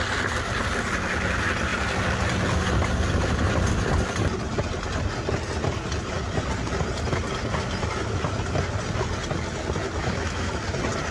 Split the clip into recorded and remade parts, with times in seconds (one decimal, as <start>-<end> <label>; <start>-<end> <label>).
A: 0.0-10.0 recorded; 10.0-10.5 remade; 10.5-11.1 recorded